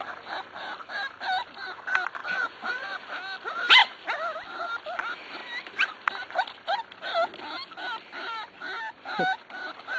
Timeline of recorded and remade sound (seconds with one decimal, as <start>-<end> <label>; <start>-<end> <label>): 0.0-2.2 recorded; 2.2-3.0 remade; 3.0-10.0 recorded